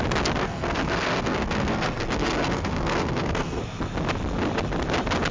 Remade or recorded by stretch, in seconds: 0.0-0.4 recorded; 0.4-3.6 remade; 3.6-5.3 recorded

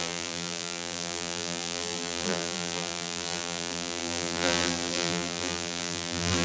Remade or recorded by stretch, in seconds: 0.0-6.4 remade

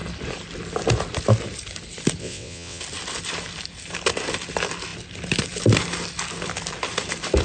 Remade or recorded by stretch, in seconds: 0.0-2.2 recorded; 2.2-2.8 remade; 2.8-7.4 recorded

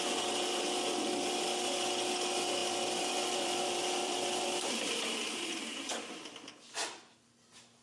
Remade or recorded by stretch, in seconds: 0.0-2.6 recorded; 2.6-6.8 remade; 6.8-7.8 recorded

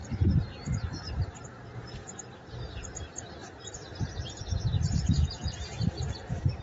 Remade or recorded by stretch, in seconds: 0.0-3.4 remade; 3.4-4.4 recorded; 4.4-6.6 remade

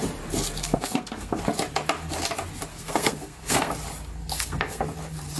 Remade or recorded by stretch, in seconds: 0.0-0.6 recorded; 0.6-1.4 remade; 1.4-2.7 recorded; 2.7-3.7 remade; 3.7-4.2 recorded; 4.2-4.8 remade; 4.8-5.4 recorded

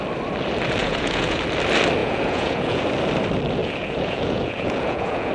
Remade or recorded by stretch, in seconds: 0.0-0.8 recorded; 0.8-1.4 remade; 1.4-2.0 recorded; 2.0-2.8 remade; 2.8-3.6 recorded; 3.6-5.3 remade